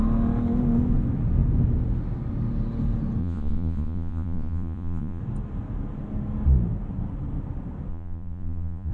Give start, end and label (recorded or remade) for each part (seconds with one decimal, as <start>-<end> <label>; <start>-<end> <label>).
0.0-3.2 recorded; 3.2-5.2 remade; 5.2-7.9 recorded; 7.9-8.9 remade